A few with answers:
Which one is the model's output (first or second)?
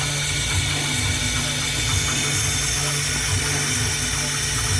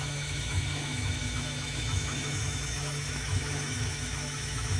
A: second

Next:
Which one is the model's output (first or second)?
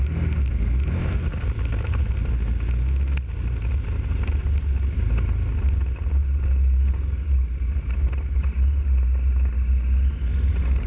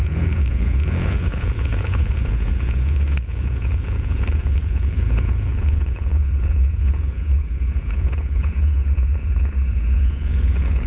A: second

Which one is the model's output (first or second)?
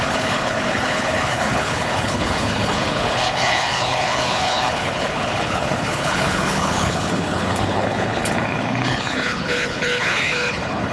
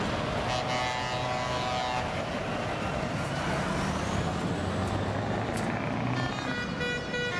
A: first